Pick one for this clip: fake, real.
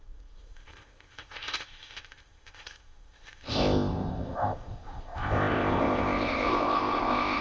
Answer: fake